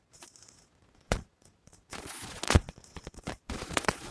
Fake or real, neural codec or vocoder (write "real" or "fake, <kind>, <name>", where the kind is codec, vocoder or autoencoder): fake, vocoder, Vocos